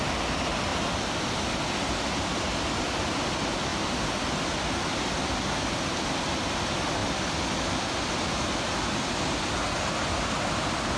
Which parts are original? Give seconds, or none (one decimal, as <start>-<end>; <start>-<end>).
0.0-11.0